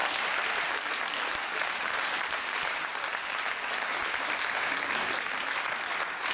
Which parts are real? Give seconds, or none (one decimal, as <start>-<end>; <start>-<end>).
3.8-6.3